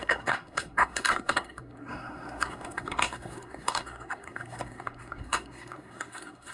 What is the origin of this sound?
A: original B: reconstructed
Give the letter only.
B